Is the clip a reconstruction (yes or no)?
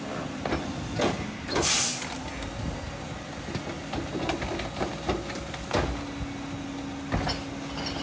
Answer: no